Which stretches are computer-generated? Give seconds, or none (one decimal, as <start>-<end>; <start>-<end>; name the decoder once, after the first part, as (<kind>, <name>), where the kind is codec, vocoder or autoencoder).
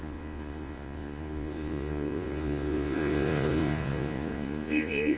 0.0-5.2 (vocoder, Vocos)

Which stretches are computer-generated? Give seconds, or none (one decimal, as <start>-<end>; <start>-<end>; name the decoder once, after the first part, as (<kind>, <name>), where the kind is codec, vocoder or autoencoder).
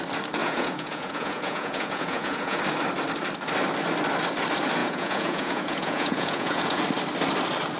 0.4-2.6 (vocoder, Vocos); 4.8-6.8